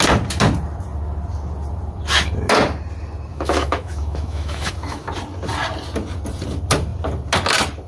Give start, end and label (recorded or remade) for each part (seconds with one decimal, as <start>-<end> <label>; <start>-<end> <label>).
0.0-3.3 recorded; 3.3-5.1 remade; 5.1-7.9 recorded